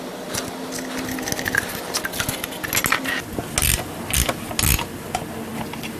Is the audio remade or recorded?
recorded